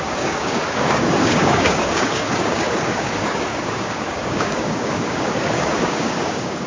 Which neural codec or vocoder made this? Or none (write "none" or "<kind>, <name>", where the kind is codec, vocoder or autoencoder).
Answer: codec, DAC